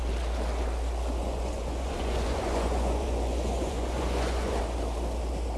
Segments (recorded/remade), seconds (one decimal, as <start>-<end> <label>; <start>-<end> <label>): 0.0-1.2 recorded; 1.2-4.6 remade; 4.6-5.6 recorded